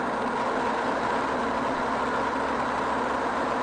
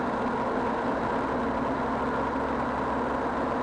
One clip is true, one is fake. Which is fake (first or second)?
first